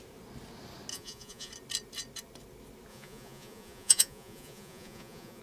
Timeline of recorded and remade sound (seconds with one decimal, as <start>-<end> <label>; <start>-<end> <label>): 0.0-0.9 recorded; 0.9-1.5 remade; 1.5-2.9 recorded; 2.9-5.4 remade